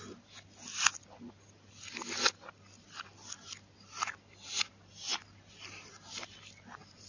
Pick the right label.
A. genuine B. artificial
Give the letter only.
A